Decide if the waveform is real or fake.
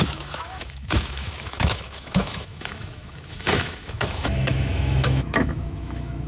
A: fake